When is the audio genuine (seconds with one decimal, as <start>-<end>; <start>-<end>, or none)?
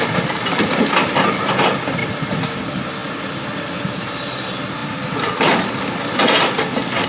0.0-7.1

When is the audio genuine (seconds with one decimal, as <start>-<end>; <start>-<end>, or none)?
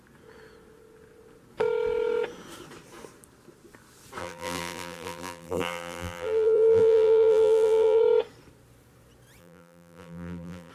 0.0-4.2; 8.0-9.4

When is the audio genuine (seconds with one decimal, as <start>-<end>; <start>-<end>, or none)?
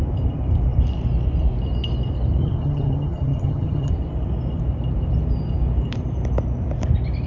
0.0-2.4; 3.9-7.3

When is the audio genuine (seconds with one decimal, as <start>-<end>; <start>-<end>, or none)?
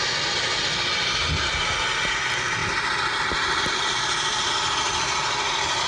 0.0-5.9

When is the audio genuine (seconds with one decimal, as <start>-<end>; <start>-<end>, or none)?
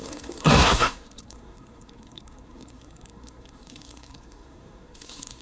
none